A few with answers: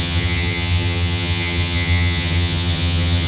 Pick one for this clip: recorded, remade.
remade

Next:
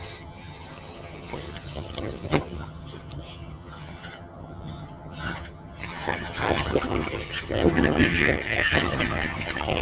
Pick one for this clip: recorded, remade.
remade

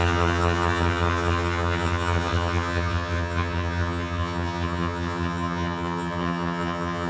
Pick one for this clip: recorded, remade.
remade